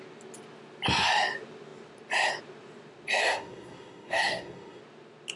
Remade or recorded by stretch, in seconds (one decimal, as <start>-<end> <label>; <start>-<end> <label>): 0.0-3.2 recorded; 3.2-4.8 remade; 4.8-5.4 recorded